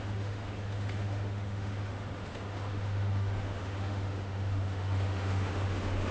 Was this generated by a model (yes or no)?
yes